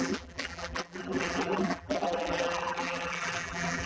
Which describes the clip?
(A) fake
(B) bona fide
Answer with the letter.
A